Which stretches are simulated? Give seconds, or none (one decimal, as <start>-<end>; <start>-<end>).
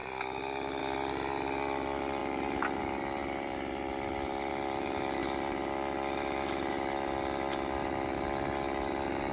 none